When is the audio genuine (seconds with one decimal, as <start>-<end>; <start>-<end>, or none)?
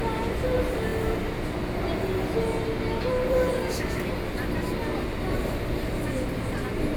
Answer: 0.0-7.0